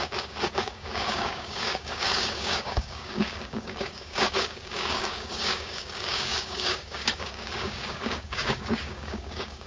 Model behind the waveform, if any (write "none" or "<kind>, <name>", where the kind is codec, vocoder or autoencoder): codec, DAC